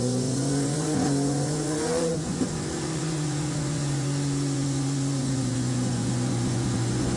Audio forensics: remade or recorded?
remade